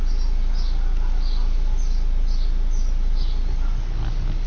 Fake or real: real